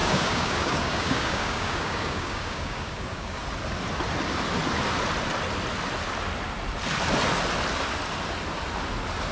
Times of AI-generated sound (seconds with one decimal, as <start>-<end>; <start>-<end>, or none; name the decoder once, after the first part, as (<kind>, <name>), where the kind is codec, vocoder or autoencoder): 0.0-3.4 (codec, DAC)

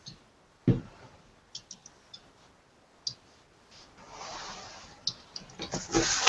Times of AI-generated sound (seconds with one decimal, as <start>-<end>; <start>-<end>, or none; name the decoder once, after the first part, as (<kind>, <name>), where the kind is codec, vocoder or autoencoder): none

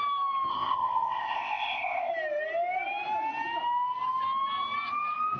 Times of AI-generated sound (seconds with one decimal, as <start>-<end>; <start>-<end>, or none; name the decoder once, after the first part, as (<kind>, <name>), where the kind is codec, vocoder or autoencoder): 0.5-2.1 (codec, ZipCodec)